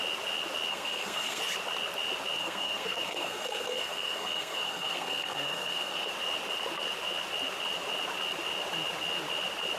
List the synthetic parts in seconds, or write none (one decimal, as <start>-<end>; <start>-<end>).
0.7-1.4; 2.4-6.1